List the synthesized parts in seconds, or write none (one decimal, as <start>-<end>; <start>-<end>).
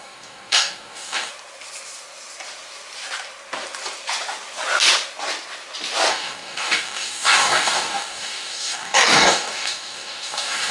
0.0-1.3; 6.1-10.7